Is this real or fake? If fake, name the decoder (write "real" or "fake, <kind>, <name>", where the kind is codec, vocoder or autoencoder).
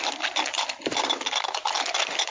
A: real